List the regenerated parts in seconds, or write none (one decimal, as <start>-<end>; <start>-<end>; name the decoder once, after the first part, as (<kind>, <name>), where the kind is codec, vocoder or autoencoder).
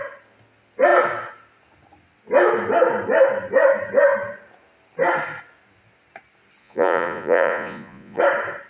6.6-8.2 (vocoder, Vocos)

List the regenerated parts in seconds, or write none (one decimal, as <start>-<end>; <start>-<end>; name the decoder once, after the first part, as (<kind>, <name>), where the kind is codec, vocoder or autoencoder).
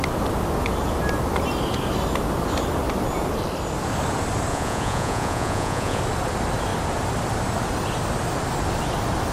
4.5-6.0 (vocoder, Vocos)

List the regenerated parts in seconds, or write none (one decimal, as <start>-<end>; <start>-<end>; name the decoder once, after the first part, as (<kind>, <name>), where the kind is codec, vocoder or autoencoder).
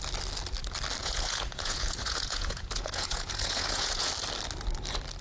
1.0-4.1 (vocoder, Vocos)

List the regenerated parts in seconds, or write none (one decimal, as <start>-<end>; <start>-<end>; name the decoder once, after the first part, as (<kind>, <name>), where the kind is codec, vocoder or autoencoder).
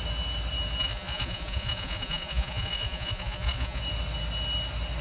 0.8-3.8 (vocoder, Vocos)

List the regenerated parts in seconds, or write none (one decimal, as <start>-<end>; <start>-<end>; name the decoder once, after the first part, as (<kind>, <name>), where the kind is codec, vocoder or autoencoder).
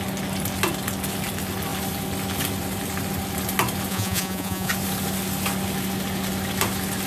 3.9-4.7 (vocoder, Vocos)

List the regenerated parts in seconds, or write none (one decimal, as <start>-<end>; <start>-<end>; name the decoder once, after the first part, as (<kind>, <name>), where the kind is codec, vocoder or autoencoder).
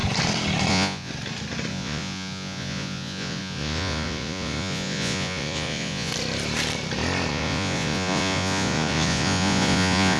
0.7-1.1 (vocoder, Vocos); 1.7-6.1; 7.3-10.2